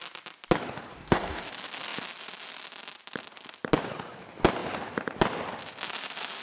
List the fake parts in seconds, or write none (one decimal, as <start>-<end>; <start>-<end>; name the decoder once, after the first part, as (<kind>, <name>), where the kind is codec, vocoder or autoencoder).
0.9-1.5 (codec, DAC)